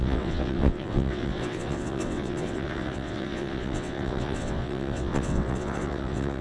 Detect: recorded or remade remade